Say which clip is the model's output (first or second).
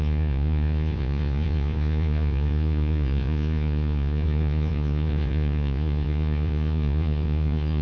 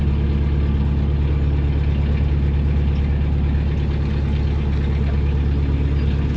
first